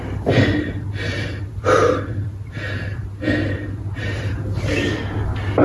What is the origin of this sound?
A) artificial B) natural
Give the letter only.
A